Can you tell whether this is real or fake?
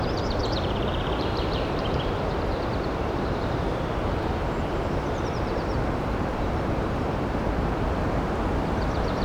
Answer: fake